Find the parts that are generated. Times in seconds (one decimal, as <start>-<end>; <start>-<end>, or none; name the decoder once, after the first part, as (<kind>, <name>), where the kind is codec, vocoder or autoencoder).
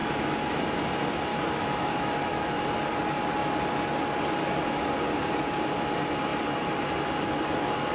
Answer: 0.0-0.6 (autoencoder, DAC-VAE); 1.3-2.5